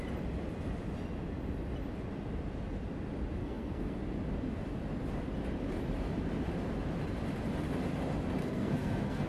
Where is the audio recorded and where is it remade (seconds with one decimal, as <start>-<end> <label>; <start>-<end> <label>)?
0.0-3.4 recorded; 3.4-4.0 remade; 4.0-8.4 recorded; 8.4-9.3 remade